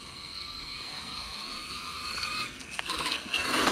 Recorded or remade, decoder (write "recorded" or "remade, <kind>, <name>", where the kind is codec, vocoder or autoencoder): remade, codec, SNAC